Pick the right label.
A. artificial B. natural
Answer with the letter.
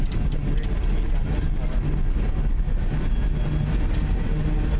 B